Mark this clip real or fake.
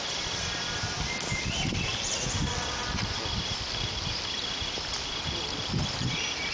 real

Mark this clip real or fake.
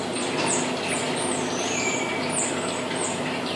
fake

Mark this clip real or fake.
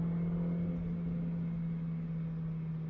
real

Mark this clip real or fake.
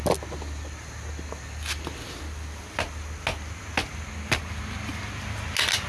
real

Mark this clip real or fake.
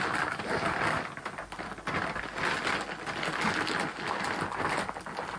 real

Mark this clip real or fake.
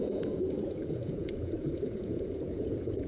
fake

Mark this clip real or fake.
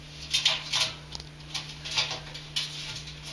real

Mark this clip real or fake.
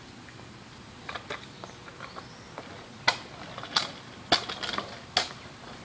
real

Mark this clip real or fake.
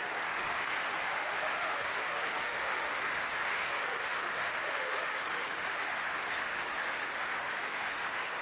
fake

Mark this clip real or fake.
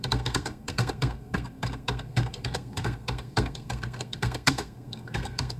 fake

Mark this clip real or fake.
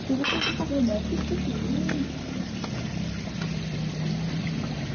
real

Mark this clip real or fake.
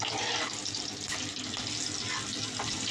real